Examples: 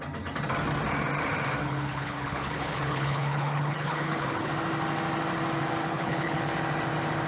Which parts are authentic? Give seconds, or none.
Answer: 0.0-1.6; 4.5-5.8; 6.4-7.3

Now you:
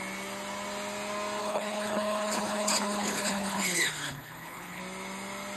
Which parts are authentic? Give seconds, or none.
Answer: 0.0-1.4; 4.8-5.6

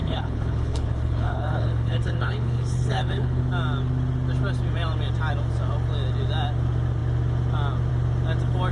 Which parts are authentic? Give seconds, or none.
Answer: 3.4-8.7